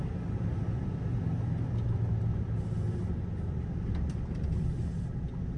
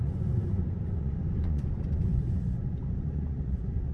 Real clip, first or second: first